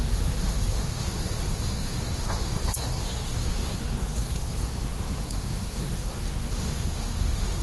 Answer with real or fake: fake